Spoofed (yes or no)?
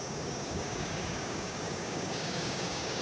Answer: yes